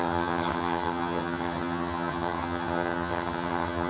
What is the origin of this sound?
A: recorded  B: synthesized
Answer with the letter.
B